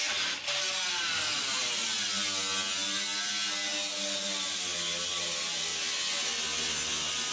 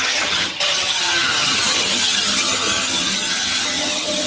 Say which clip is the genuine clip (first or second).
first